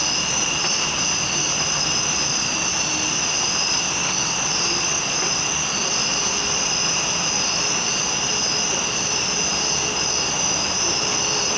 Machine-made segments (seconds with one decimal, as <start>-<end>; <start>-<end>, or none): none